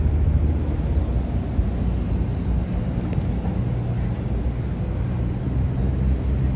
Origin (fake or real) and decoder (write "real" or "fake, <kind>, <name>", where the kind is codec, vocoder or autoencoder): real